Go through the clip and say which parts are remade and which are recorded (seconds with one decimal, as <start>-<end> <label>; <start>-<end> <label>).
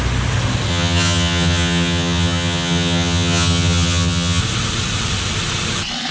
0.0-0.7 recorded; 0.7-4.4 remade; 4.4-6.1 recorded